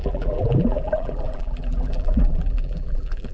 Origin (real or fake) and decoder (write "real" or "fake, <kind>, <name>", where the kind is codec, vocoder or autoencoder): fake, vocoder, BigVGAN v2